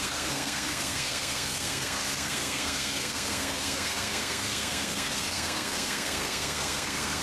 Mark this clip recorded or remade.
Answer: remade